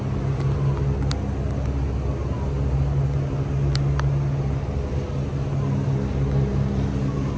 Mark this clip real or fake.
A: real